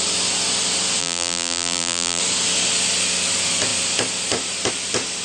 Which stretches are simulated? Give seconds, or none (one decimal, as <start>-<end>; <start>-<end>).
1.0-2.2